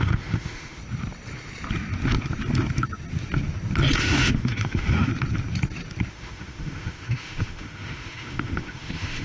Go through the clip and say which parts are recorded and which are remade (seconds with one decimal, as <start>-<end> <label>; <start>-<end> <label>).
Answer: 0.0-0.8 remade; 0.8-4.0 recorded; 4.0-5.1 remade; 5.1-6.1 recorded; 6.1-9.2 remade